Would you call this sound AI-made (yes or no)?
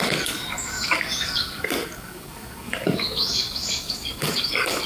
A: yes